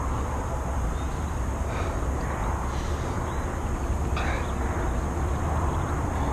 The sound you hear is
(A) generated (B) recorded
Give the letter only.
B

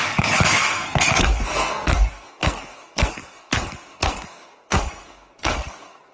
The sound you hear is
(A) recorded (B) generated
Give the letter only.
B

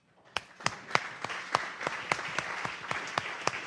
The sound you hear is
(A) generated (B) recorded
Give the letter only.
B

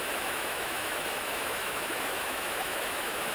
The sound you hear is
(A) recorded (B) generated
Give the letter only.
B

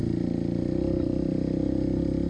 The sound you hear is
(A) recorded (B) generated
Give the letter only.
A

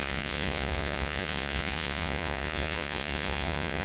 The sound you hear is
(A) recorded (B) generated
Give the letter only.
B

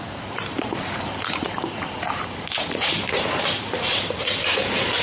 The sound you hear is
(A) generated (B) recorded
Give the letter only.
A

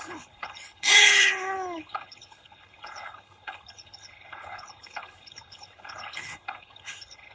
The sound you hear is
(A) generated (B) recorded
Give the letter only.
A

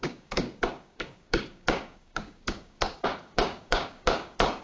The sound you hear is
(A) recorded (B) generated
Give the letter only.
B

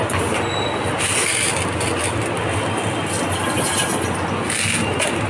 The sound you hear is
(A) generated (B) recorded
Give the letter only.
B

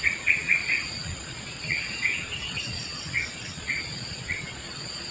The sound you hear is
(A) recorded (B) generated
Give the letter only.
B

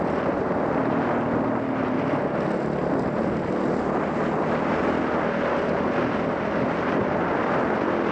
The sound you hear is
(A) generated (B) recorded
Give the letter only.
B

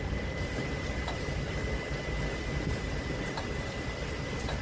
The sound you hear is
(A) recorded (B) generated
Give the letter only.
B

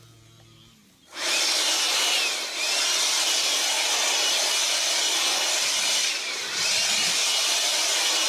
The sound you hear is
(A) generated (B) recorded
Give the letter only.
B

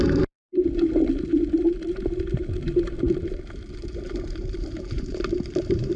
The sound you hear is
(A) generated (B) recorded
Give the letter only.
A